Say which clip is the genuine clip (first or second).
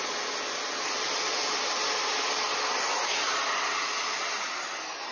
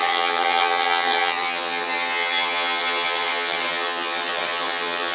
first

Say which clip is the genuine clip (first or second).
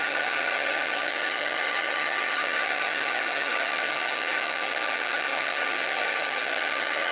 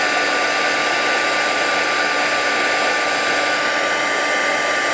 second